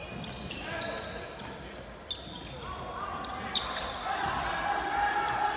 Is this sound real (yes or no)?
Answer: yes